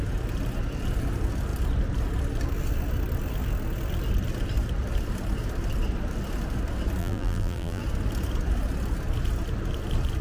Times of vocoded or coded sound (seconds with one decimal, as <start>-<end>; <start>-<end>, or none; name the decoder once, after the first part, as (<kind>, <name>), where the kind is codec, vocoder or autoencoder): 7.0-7.8 (vocoder, BigVGAN v2)